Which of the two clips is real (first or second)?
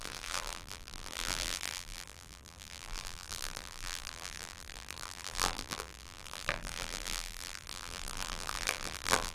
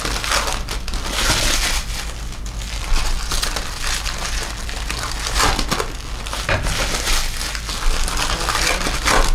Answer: second